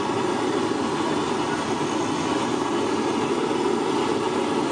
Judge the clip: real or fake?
real